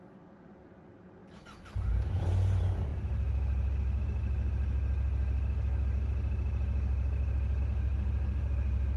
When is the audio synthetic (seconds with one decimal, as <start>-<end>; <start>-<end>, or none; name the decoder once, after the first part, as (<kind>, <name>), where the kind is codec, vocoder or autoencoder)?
none